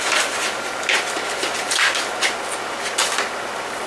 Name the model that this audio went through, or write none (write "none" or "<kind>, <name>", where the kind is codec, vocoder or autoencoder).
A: none